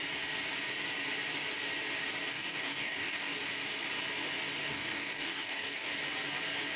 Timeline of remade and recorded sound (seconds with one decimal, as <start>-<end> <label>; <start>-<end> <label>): 0.0-2.3 recorded; 2.3-3.4 remade; 3.4-4.7 recorded; 4.7-5.9 remade; 5.9-6.8 recorded